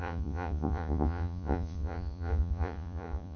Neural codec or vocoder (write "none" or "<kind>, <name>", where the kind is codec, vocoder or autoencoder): vocoder, Vocos